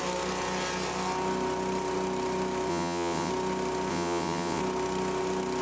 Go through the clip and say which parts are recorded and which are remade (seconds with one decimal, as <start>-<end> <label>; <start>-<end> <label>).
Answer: 0.0-2.7 recorded; 2.7-3.3 remade; 3.3-3.9 recorded; 3.9-4.6 remade; 4.6-5.6 recorded